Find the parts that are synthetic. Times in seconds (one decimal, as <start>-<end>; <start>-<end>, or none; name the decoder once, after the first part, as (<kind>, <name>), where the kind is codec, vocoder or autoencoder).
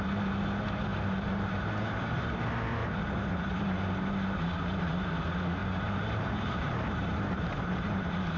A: 0.9-2.4 (vocoder, BigVGAN v2); 2.8-5.1; 5.6-8.4